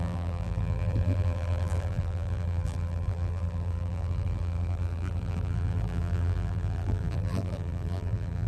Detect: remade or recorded remade